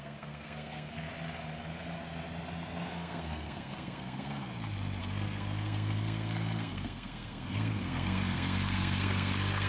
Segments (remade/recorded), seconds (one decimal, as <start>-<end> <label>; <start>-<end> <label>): 0.0-1.1 remade; 1.1-2.9 recorded; 2.9-4.5 remade; 4.5-5.0 recorded; 5.0-9.7 remade